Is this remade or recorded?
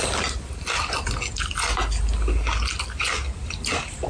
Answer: recorded